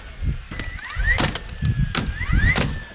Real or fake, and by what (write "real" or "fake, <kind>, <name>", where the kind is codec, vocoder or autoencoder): real